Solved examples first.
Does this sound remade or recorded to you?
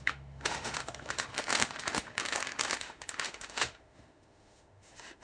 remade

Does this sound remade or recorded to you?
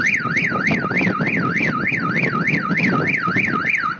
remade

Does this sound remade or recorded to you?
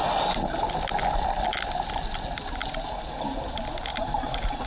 recorded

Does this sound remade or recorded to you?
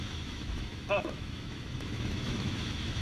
remade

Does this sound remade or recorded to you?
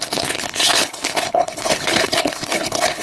remade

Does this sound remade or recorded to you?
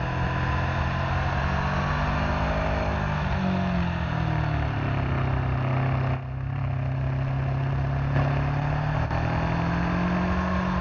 recorded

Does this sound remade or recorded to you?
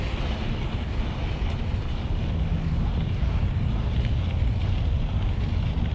recorded